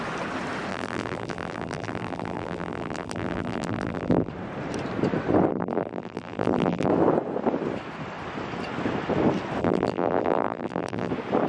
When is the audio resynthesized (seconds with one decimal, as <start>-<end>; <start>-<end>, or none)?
0.7-4.3; 5.5-6.9; 9.6-11.1